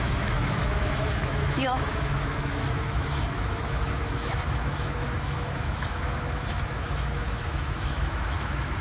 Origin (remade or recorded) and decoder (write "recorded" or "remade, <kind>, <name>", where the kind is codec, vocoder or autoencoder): remade, autoencoder, DAC-VAE